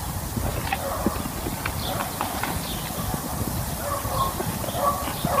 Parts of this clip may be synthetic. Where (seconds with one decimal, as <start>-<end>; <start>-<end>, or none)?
0.0-0.5; 3.7-5.4